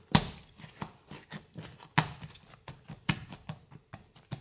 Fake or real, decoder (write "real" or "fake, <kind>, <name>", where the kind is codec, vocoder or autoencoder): real